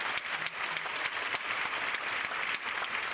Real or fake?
real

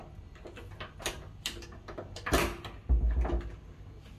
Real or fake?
real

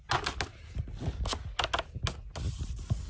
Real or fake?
real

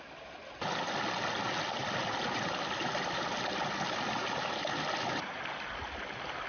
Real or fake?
real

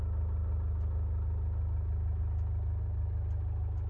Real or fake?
real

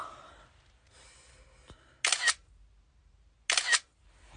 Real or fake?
real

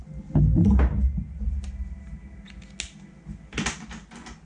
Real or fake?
real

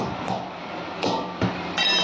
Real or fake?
real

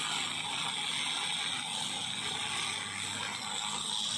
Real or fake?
real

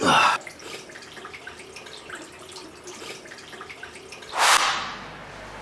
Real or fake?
real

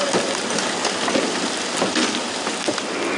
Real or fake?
real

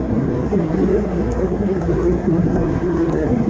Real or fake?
fake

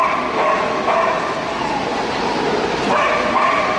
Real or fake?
real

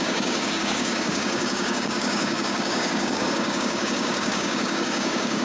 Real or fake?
fake